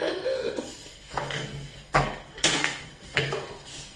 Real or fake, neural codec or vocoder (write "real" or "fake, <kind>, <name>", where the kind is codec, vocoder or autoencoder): fake, codec, SNAC